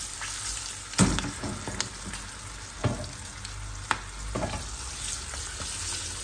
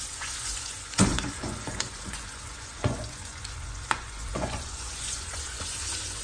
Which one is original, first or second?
first